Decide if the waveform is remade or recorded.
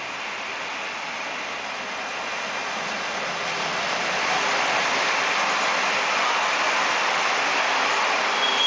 recorded